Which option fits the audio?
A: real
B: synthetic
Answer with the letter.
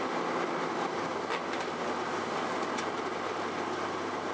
B